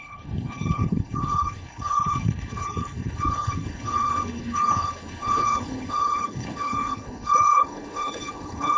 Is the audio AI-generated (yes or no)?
yes